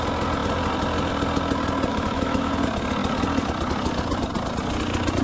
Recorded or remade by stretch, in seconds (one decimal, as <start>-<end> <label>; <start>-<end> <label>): 0.0-1.9 recorded; 1.9-2.5 remade; 2.5-5.2 recorded

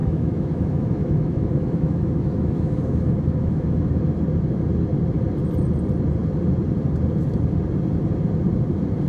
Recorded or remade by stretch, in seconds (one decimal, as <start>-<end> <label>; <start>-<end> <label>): 0.0-4.0 remade; 4.0-9.1 recorded

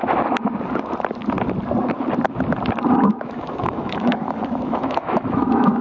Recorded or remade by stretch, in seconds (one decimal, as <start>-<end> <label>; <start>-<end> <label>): 0.0-3.1 recorded; 3.1-5.8 remade

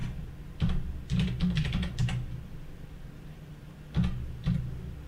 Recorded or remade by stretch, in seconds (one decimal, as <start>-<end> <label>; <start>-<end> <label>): 0.0-5.1 recorded

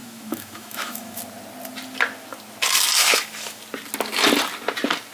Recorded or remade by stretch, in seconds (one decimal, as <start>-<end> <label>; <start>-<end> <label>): 0.0-1.2 remade; 1.2-3.0 recorded; 3.0-3.6 remade; 3.6-5.1 recorded

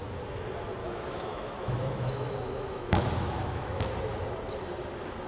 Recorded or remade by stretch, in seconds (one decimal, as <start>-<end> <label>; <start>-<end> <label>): 0.0-0.8 recorded; 0.8-3.9 remade; 3.9-5.3 recorded

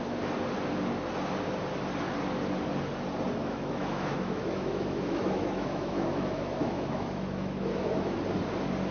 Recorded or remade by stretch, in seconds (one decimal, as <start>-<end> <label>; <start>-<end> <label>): 0.0-3.4 recorded; 3.4-8.2 remade; 8.2-8.9 recorded